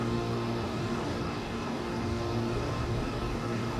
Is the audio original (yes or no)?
no